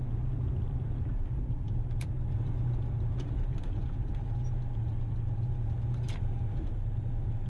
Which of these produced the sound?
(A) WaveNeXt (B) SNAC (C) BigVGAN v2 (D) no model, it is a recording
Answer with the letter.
C